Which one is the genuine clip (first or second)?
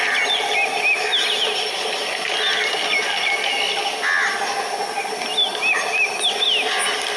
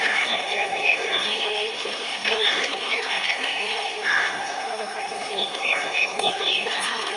first